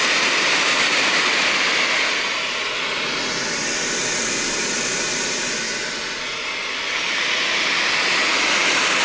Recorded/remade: recorded